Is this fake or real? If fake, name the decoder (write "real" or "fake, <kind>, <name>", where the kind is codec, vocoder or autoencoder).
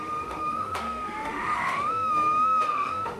fake, autoencoder, DAC-VAE